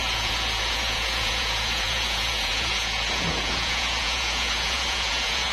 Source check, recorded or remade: remade